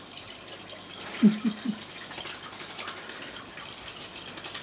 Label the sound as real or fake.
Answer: real